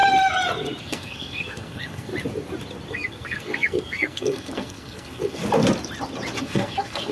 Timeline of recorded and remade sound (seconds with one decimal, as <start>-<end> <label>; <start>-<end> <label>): 0.0-0.8 recorded; 0.8-2.1 remade; 2.1-2.9 recorded; 2.9-5.4 remade; 5.4-6.4 recorded; 6.4-7.1 remade